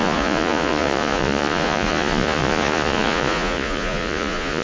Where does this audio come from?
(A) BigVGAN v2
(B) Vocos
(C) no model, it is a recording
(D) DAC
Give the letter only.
B